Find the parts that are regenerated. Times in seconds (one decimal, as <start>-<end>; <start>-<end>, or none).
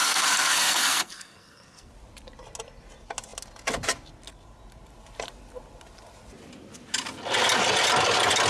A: 0.0-1.9